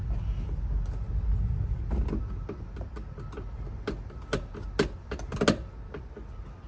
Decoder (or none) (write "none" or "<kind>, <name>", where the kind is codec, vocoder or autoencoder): none